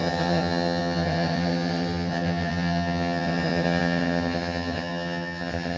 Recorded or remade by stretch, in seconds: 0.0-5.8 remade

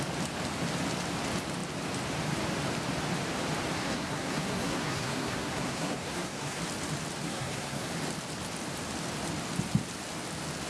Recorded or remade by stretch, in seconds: 0.0-3.8 recorded; 3.8-6.6 remade; 6.6-7.2 recorded; 7.2-7.9 remade; 7.9-10.7 recorded

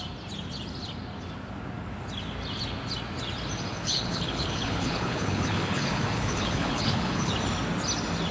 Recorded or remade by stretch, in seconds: 0.0-3.7 recorded; 3.7-7.3 remade; 7.3-8.3 recorded

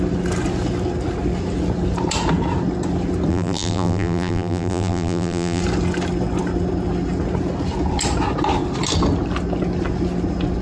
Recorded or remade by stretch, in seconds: 0.0-3.3 recorded; 3.3-5.6 remade; 5.6-10.6 recorded

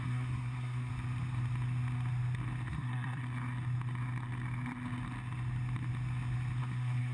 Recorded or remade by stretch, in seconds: 0.0-0.9 remade; 0.9-2.7 recorded; 2.7-3.2 remade; 3.2-6.6 recorded; 6.6-7.1 remade

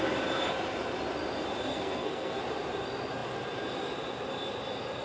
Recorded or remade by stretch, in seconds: 0.0-1.7 recorded; 1.7-2.4 remade; 2.4-5.0 recorded